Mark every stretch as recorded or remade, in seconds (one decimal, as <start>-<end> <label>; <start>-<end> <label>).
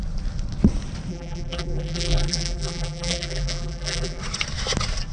0.0-1.1 recorded; 1.1-4.2 remade; 4.2-5.1 recorded